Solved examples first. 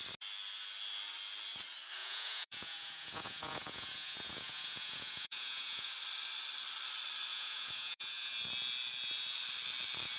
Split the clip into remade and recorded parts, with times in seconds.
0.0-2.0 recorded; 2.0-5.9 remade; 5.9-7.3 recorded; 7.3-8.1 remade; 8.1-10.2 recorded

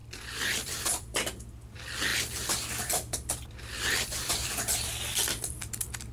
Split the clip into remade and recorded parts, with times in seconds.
0.0-1.7 remade; 1.7-2.1 recorded; 2.1-6.1 remade

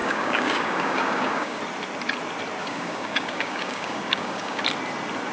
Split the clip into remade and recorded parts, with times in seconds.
0.0-1.6 remade; 1.6-2.6 recorded; 2.6-4.6 remade; 4.6-5.3 recorded

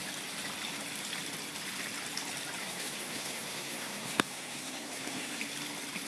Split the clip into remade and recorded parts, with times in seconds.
0.0-2.6 recorded; 2.6-5.4 remade; 5.4-6.1 recorded

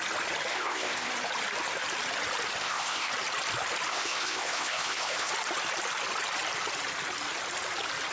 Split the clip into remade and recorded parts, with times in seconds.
0.0-0.5 recorded; 0.5-1.1 remade; 1.1-2.6 recorded; 2.6-3.1 remade; 3.1-3.9 recorded; 3.9-5.3 remade; 5.3-8.1 recorded

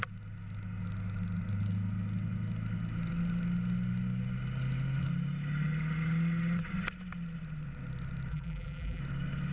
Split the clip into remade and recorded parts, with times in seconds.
0.0-8.3 recorded; 8.3-9.0 remade; 9.0-9.5 recorded

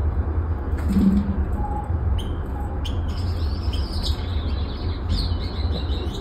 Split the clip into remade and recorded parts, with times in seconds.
0.0-6.2 recorded